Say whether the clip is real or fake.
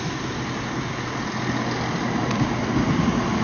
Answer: real